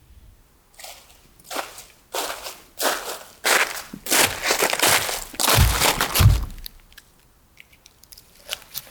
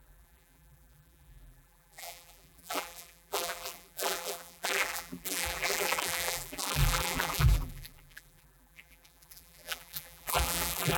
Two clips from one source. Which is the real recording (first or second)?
first